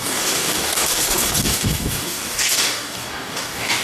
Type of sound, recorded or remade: remade